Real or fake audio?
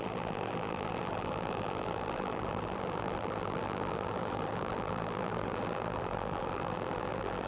fake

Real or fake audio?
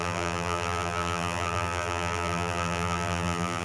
fake